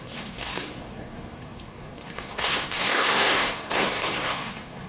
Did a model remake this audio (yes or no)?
yes